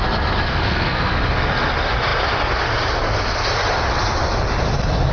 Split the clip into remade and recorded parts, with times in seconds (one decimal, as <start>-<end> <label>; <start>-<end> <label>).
0.0-0.5 recorded; 0.5-1.1 remade; 1.1-5.1 recorded